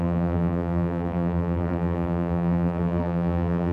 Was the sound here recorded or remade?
remade